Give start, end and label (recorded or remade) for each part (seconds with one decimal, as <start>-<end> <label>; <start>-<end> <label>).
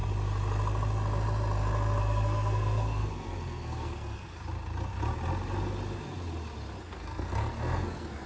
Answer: 0.0-2.0 recorded; 2.0-4.3 remade; 4.3-6.8 recorded; 6.8-8.3 remade